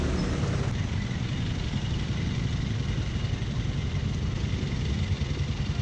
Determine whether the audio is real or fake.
real